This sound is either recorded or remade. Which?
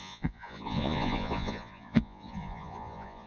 remade